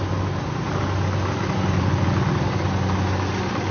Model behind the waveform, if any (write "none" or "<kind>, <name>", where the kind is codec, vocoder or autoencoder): none